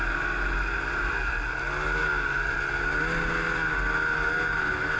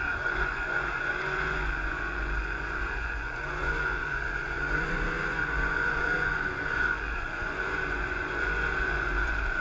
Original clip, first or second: first